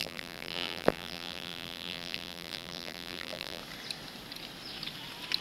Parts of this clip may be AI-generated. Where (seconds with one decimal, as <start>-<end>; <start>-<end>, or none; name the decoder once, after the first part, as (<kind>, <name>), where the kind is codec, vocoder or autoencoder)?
0.0-3.6 (vocoder, BigVGAN v2)